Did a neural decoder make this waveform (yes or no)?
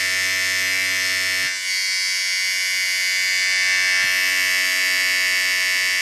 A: no